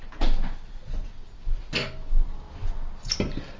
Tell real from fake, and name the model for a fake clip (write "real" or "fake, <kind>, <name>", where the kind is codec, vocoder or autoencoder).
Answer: real